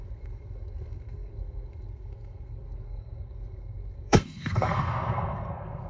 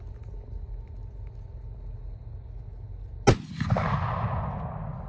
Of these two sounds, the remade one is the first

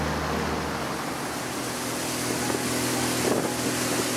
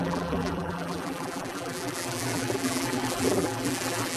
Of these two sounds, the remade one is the second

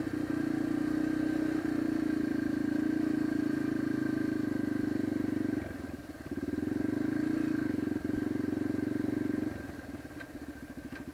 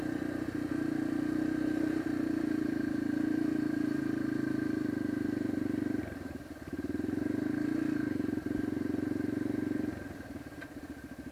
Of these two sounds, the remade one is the second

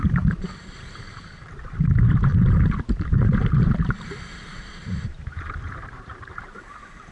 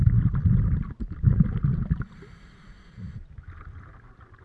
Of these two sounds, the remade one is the first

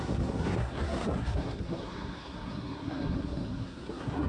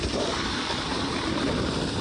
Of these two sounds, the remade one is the first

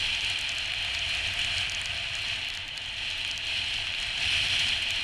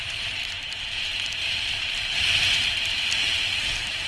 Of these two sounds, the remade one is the second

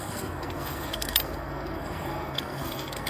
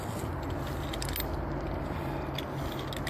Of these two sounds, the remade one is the first